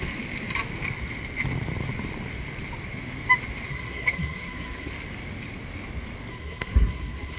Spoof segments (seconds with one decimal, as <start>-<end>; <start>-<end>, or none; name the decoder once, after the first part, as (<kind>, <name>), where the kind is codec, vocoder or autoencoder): 3.7-4.9 (codec, SNAC); 6.3-7.4